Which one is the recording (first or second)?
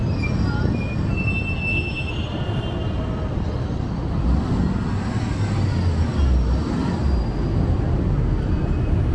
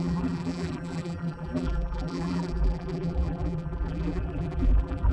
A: first